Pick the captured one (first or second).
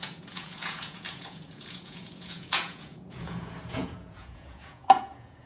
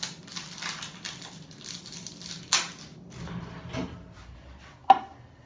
second